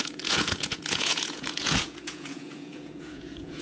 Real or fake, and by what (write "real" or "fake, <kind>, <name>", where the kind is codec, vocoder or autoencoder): fake, vocoder, Vocos